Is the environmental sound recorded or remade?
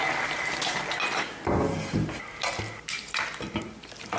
recorded